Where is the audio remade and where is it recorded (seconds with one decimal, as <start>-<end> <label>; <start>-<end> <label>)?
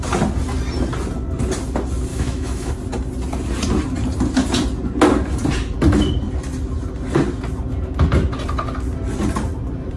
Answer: 0.0-2.1 recorded; 2.1-2.7 remade; 2.7-10.0 recorded